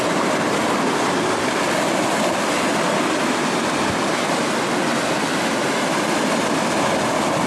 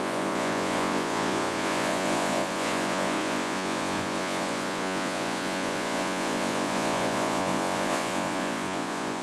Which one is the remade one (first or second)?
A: second